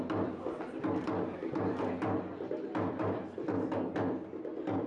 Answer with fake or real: real